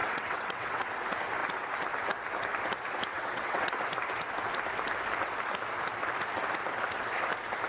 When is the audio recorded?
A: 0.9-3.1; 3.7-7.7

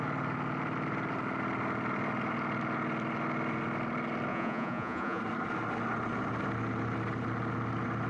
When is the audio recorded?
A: 0.0-4.3; 5.2-8.1